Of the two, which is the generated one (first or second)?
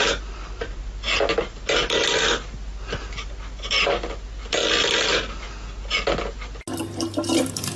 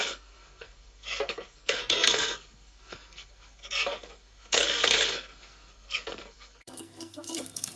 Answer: second